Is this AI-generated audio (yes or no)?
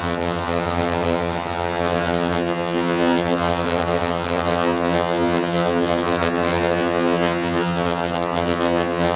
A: yes